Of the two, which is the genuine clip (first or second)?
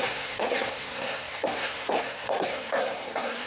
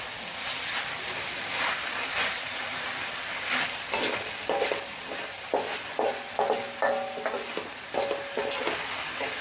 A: second